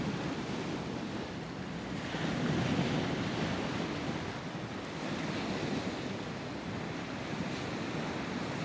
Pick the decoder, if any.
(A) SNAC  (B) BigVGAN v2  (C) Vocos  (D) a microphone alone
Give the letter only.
D